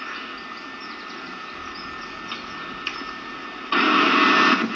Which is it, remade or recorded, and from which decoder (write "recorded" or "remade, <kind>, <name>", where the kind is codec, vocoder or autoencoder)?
recorded